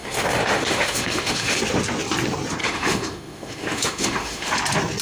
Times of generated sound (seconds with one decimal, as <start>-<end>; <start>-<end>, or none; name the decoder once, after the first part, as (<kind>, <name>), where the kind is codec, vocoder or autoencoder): 0.0-1.6 (autoencoder, DAC-VAE); 2.6-4.5